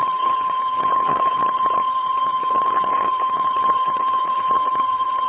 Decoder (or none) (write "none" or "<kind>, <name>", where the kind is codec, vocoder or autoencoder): vocoder, HiFi-GAN